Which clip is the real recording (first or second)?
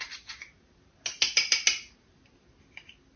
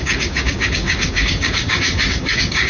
first